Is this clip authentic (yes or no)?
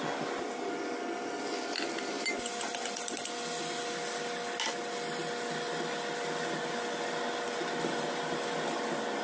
yes